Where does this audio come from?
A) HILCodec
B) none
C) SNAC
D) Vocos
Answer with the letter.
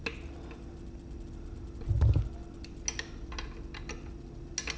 B